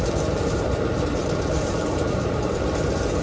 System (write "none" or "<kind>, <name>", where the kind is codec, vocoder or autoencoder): vocoder, BigVGAN v2